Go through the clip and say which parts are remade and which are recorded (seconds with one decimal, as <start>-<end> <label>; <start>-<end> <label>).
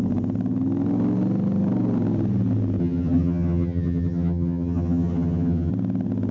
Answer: 0.0-2.8 recorded; 2.8-5.7 remade; 5.7-6.3 recorded